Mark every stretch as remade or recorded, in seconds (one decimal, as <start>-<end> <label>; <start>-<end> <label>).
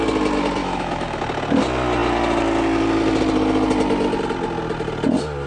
0.0-0.6 recorded; 0.6-1.2 remade; 1.2-5.5 recorded